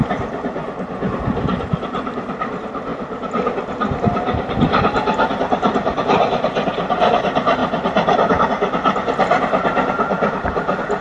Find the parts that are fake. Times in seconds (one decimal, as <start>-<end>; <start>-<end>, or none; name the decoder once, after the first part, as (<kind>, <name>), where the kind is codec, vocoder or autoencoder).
none